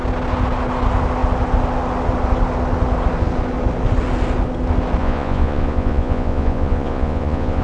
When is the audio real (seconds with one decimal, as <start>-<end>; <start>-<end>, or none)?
0.0-5.0